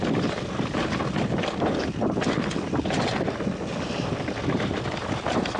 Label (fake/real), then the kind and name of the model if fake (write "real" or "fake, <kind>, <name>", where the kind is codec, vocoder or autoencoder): real